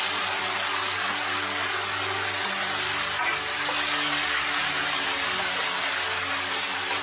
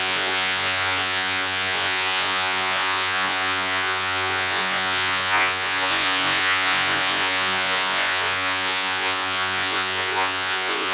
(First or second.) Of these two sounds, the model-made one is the second